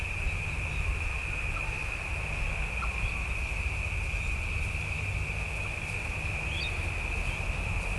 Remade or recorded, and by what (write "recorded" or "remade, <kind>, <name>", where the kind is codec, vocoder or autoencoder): recorded